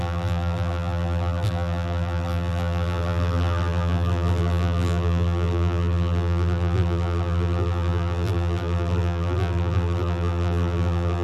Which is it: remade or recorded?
remade